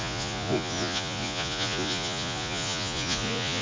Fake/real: fake